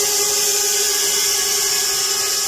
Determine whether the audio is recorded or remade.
recorded